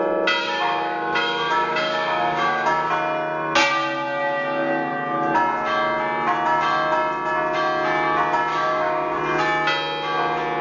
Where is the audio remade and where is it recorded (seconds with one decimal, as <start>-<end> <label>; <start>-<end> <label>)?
0.0-0.4 recorded; 0.4-2.9 remade; 2.9-8.5 recorded; 8.5-9.2 remade; 9.2-10.6 recorded

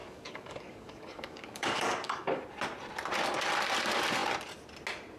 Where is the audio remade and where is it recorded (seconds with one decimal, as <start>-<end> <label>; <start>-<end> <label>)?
0.0-2.4 remade; 2.4-5.2 recorded

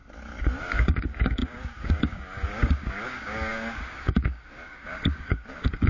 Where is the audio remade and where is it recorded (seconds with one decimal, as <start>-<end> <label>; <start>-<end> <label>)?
0.0-0.6 recorded; 0.6-5.9 remade

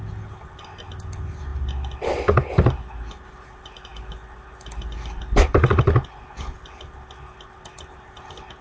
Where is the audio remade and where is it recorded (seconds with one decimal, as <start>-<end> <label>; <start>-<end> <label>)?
0.0-8.6 recorded

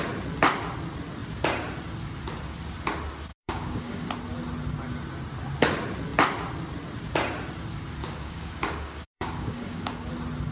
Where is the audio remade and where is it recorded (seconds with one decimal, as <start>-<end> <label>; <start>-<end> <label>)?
0.0-3.3 recorded; 3.3-4.1 remade; 4.1-8.0 recorded; 8.0-10.1 remade; 10.1-10.5 recorded